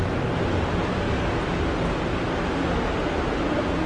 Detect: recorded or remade recorded